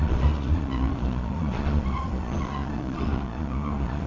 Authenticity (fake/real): fake